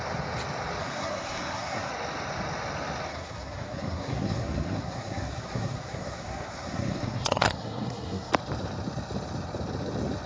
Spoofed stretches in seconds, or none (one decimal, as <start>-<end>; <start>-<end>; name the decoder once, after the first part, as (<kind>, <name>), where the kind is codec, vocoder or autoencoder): 0.8-1.9 (codec, SNAC); 3.1-8.3